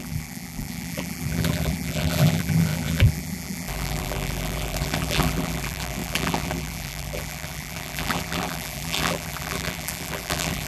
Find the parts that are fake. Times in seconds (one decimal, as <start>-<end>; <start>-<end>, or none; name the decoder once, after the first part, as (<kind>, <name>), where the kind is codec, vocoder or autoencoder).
0.0-10.7 (vocoder, BigVGAN v2)